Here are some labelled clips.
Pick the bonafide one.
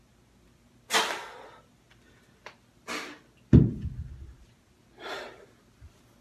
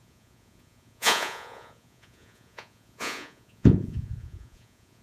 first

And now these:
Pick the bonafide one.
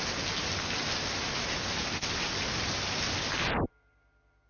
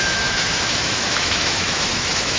first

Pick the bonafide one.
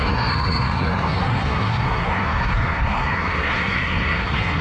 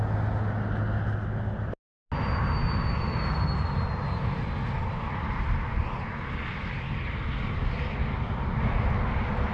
second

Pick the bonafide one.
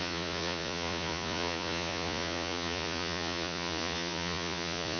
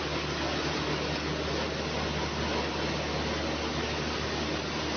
second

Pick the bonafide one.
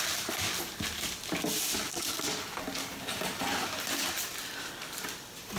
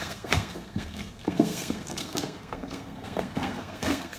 first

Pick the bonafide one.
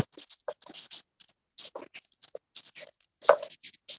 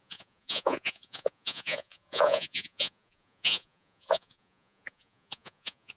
first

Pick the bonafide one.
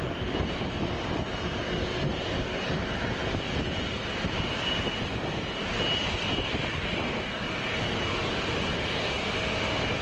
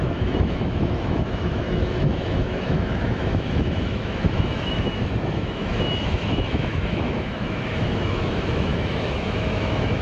first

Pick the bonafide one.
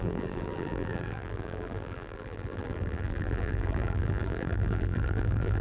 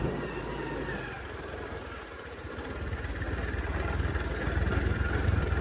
second